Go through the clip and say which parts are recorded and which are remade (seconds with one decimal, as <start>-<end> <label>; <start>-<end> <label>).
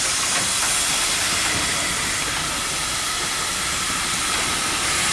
0.0-5.1 recorded